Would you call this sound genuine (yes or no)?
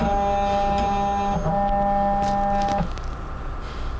yes